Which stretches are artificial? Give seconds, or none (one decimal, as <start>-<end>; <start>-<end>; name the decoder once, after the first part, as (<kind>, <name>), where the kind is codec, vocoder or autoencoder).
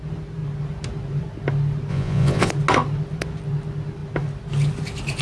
1.9-2.5 (vocoder, Vocos)